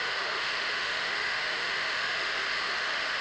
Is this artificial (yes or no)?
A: yes